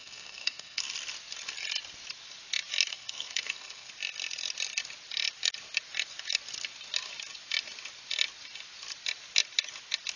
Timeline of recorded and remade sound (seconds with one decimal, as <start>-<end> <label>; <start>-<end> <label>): 0.0-0.8 remade; 0.8-2.9 recorded; 2.9-3.9 remade; 3.9-10.2 recorded